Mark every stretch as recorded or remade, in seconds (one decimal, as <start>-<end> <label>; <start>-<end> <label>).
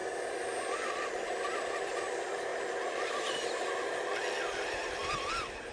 0.0-0.7 recorded; 0.7-2.5 remade; 2.5-4.4 recorded; 4.4-5.7 remade